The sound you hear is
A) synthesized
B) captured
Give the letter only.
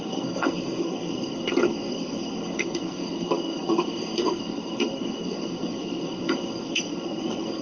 A